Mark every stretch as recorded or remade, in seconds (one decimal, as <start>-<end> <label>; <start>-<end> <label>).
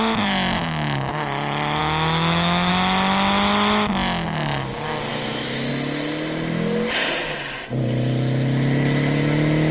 0.0-1.8 recorded; 1.8-2.7 remade; 2.7-5.1 recorded; 5.1-5.7 remade; 5.7-9.7 recorded